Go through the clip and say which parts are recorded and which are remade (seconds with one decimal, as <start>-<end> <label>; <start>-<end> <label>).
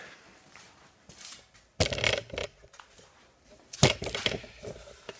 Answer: 0.0-2.4 recorded; 2.4-3.2 remade; 3.2-5.2 recorded